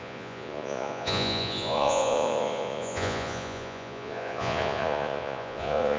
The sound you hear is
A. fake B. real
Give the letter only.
A